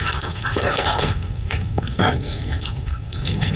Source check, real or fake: fake